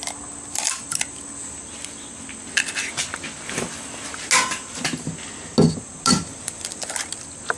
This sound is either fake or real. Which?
real